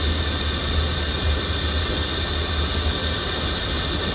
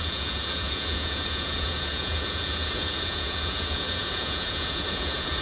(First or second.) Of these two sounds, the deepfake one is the second